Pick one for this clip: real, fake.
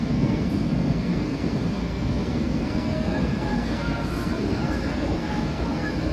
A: fake